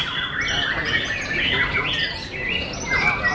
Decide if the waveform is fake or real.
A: real